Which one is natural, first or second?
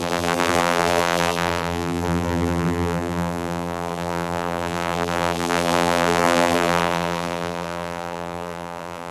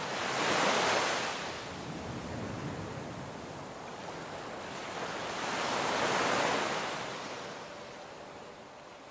second